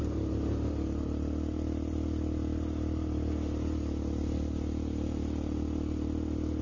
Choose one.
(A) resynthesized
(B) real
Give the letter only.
B